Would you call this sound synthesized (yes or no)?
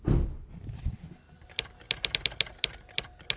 no